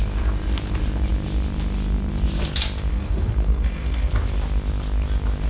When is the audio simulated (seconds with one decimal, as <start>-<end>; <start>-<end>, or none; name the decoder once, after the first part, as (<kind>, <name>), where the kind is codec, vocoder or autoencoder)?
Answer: 2.9-4.1 (codec, SNAC)